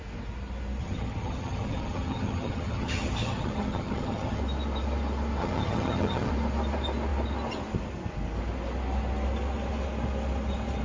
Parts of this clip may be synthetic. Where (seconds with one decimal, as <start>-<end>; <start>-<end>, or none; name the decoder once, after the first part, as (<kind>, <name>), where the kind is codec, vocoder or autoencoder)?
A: 0.8-4.4 (vocoder, HiFi-GAN); 5.4-6.3